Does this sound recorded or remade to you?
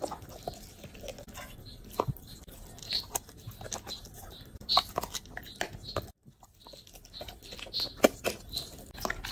recorded